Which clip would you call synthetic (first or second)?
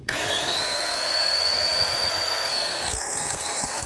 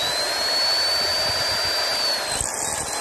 first